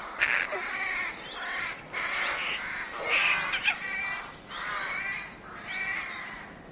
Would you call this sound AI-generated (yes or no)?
no